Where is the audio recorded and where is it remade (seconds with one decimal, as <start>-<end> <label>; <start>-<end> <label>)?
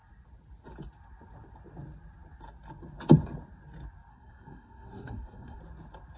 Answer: 0.0-4.1 recorded; 4.1-5.6 remade; 5.6-6.2 recorded